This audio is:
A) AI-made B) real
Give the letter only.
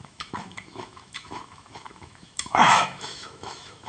A